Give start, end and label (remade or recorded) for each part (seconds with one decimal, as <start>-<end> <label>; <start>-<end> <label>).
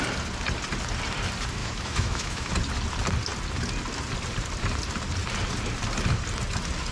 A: 0.0-1.6 recorded; 1.6-2.5 remade; 2.5-6.9 recorded